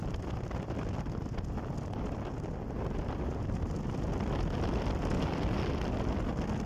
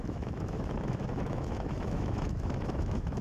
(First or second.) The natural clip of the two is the first